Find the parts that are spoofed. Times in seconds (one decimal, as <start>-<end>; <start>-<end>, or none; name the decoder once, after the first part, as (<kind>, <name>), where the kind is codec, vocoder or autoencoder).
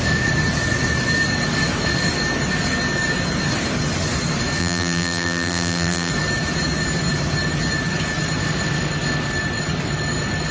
4.6-6.1 (vocoder, BigVGAN v2)